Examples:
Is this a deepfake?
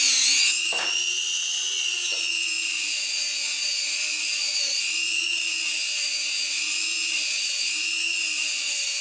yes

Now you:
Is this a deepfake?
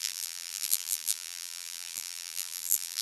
yes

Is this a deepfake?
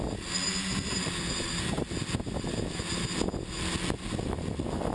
no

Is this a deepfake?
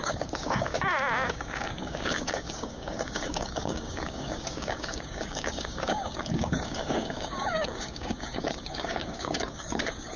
yes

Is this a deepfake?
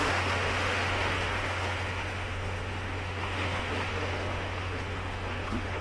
yes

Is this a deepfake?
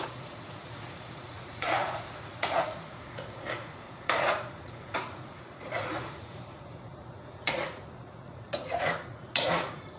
yes